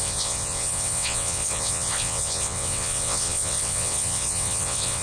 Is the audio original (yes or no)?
no